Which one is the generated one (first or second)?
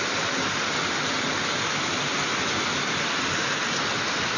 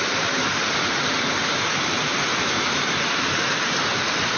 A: second